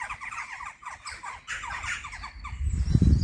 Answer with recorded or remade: recorded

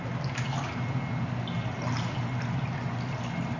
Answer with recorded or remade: recorded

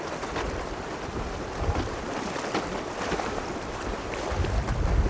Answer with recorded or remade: recorded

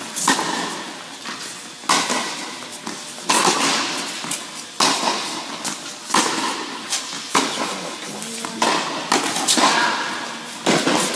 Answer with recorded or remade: recorded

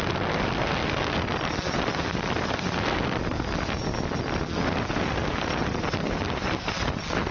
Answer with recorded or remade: recorded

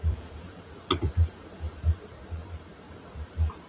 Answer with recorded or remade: remade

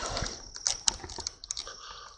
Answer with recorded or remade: recorded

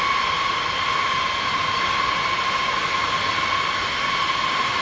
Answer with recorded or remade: recorded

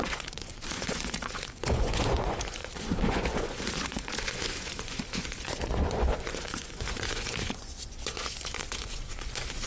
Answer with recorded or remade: remade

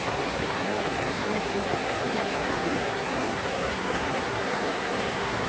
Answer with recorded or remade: remade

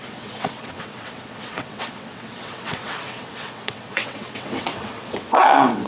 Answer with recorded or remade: remade